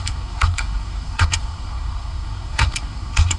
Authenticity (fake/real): fake